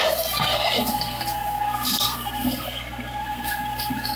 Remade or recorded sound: remade